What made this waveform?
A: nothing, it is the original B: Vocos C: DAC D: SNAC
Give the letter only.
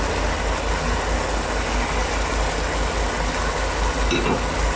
A